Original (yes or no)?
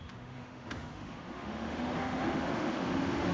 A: no